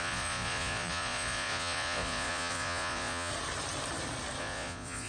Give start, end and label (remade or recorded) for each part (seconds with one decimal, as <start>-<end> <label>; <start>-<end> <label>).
0.0-3.3 remade; 3.3-4.4 recorded; 4.4-5.1 remade